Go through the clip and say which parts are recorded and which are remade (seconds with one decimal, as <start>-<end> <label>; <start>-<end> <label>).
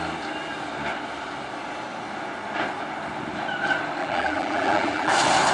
0.0-4.0 recorded; 4.0-5.1 remade; 5.1-5.5 recorded